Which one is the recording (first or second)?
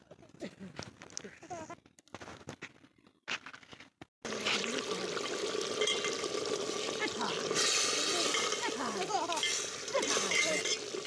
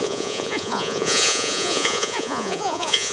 first